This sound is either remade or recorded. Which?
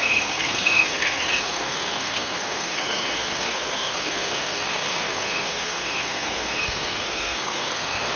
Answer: remade